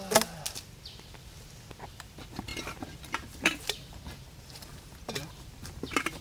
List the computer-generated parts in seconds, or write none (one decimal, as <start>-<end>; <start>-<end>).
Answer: 2.5-5.2